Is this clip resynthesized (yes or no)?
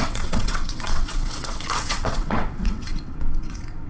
yes